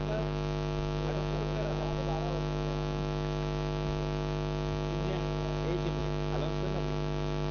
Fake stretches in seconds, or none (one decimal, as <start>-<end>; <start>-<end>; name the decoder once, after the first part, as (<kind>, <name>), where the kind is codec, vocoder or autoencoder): none